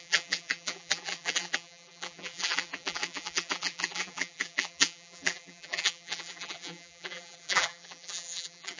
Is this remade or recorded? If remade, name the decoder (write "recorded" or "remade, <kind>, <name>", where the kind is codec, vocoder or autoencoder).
remade, vocoder, BigVGAN v2